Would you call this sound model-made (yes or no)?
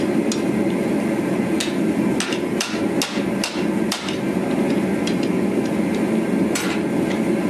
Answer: no